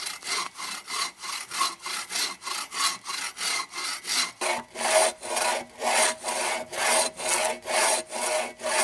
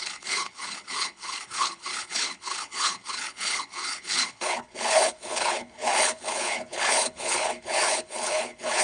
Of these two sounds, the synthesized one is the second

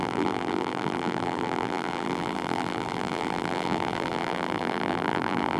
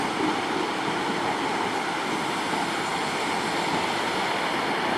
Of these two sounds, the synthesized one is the first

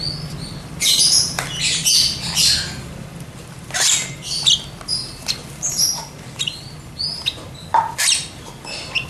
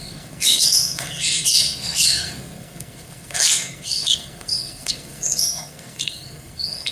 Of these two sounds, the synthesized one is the second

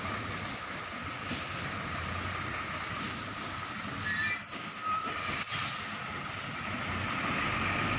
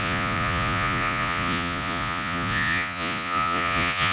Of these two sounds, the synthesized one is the second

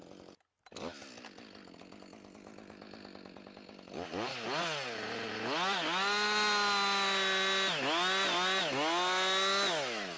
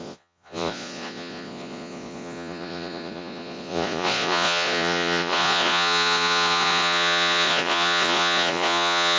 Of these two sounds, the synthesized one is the second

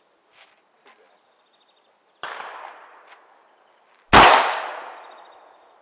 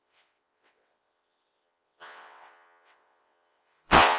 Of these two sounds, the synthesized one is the second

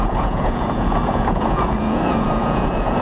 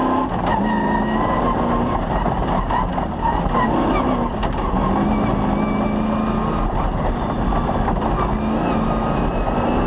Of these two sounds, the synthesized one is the first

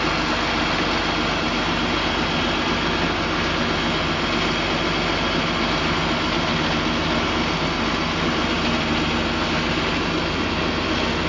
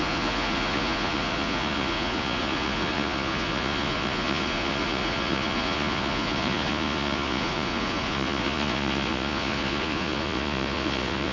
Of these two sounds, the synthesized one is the second